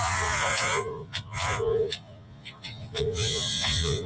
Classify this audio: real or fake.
fake